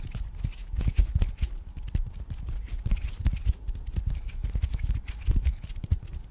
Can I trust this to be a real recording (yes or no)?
yes